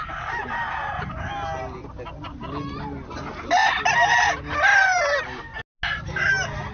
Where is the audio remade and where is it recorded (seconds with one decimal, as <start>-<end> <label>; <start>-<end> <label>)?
0.0-6.7 recorded